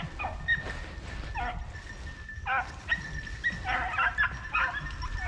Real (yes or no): yes